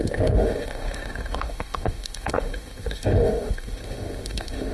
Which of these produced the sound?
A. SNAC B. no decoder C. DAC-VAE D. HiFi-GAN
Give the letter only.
C